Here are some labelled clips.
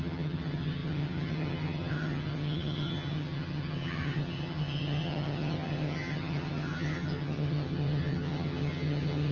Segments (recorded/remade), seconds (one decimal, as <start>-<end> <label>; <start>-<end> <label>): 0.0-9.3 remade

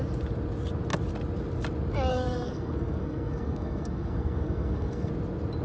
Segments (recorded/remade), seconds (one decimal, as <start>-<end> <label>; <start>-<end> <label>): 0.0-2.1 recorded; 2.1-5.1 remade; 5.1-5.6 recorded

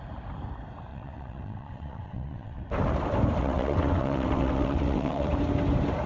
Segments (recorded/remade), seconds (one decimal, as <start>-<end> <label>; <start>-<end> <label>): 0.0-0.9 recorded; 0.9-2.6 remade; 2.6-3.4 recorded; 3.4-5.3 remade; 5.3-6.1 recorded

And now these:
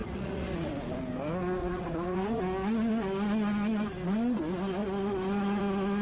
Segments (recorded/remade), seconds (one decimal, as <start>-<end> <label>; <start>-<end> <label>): 0.0-0.7 remade; 0.7-1.6 recorded; 1.6-2.4 remade; 2.4-6.0 recorded